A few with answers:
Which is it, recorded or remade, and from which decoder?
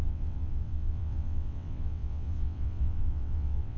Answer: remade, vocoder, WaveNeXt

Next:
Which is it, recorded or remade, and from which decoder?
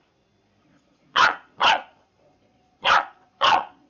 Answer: remade, vocoder, Vocos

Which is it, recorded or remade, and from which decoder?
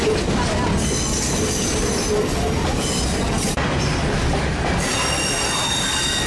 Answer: recorded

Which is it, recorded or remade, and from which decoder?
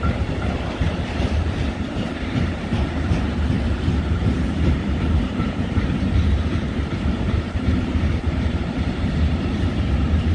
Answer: remade, vocoder, BigVGAN v2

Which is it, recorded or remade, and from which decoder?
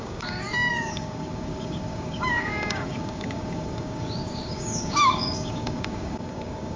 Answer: remade, codec, DAC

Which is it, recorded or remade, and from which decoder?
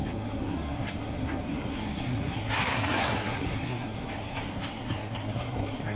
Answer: remade, codec, SNAC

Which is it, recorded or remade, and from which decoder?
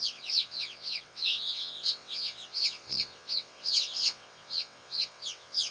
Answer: remade, vocoder, WaveNeXt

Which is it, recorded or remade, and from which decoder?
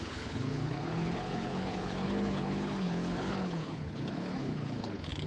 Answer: remade, codec, HILCodec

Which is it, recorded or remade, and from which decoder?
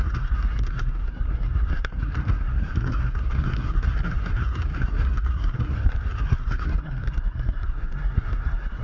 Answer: remade, codec, SNAC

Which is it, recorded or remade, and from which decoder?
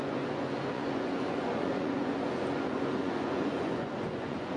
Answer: remade, vocoder, Vocos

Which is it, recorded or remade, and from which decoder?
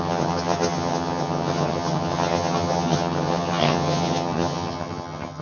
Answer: remade, vocoder, HiFi-GAN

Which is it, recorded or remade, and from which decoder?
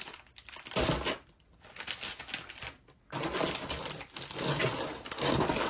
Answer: recorded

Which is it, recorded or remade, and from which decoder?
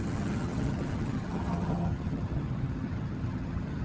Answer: remade, vocoder, HiFi-GAN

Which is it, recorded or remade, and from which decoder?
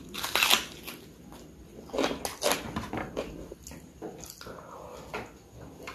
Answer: recorded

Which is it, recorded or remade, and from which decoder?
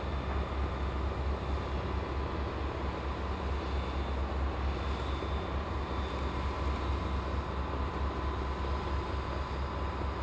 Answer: recorded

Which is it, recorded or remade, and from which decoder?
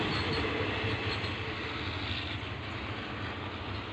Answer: recorded